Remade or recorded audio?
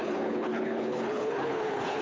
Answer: remade